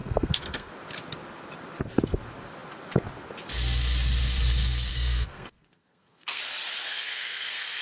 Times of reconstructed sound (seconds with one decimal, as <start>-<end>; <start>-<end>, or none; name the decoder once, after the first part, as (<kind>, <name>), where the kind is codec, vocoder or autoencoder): 0.0-0.7 (codec, SNAC); 4.9-6.4; 6.9-7.8